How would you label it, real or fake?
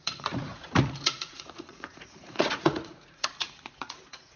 fake